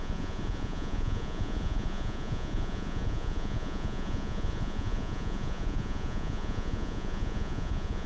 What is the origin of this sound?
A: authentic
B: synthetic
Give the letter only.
B